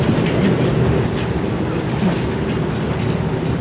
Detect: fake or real fake